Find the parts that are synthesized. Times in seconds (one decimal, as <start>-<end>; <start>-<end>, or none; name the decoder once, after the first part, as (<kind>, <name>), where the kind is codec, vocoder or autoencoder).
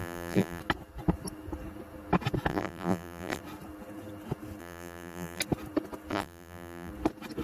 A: 0.0-0.6 (vocoder, BigVGAN v2); 2.5-3.4; 4.6-5.4; 6.1-6.9